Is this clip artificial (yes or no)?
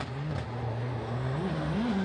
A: no